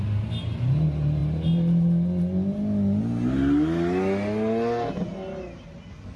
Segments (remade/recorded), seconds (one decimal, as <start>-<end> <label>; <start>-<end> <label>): 0.0-6.2 recorded